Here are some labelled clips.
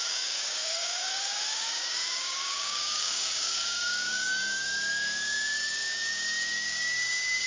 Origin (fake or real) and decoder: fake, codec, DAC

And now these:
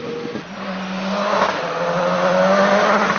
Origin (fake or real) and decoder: real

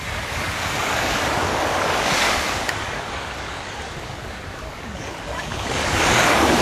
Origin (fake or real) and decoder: fake, codec, DAC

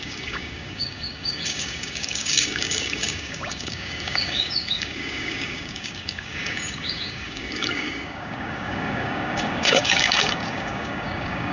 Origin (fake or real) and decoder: fake, codec, DAC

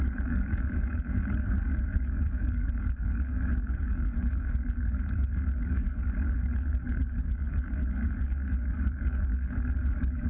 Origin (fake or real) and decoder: fake, codec, DAC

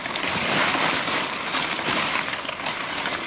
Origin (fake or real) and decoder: real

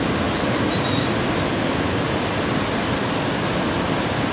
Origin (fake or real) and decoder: real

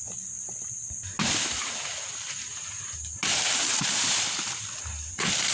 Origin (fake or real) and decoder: real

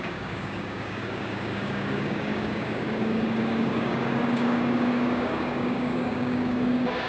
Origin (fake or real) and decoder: fake, codec, DAC